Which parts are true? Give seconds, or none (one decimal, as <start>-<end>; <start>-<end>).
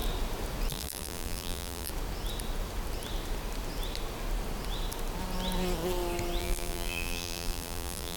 0.0-0.7; 1.9-6.4